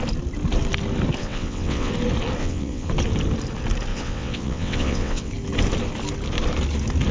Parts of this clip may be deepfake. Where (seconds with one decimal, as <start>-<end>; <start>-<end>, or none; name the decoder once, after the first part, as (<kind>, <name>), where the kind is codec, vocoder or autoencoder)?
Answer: 1.2-1.9 (vocoder, WaveNeXt); 2.4-2.9; 3.9-5.3